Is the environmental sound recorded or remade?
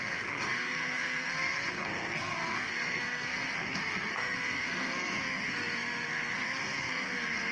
remade